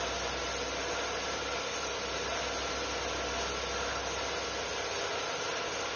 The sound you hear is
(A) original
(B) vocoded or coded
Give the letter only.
A